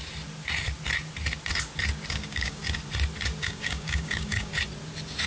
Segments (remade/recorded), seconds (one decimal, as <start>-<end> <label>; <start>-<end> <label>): 0.0-2.1 recorded; 2.1-2.6 remade; 2.6-3.4 recorded; 3.4-4.5 remade; 4.5-5.3 recorded